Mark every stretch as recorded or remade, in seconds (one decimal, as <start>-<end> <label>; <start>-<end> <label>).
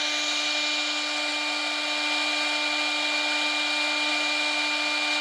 0.0-5.2 recorded